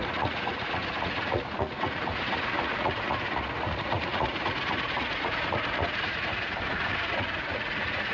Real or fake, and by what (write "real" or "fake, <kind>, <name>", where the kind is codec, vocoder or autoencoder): fake, vocoder, Vocos